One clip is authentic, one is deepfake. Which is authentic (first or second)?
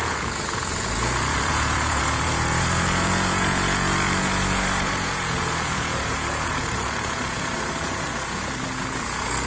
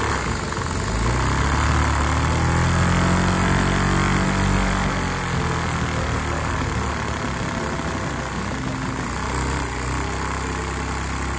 second